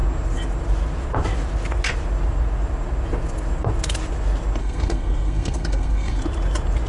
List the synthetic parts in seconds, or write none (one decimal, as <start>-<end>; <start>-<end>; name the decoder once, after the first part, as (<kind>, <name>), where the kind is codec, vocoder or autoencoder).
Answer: 4.6-6.2 (codec, SNAC)